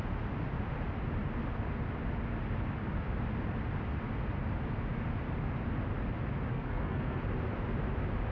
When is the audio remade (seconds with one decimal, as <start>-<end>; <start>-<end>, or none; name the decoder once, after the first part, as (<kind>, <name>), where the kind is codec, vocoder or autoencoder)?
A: 6.5-7.2 (codec, SNAC)